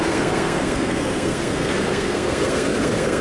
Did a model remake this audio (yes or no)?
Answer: yes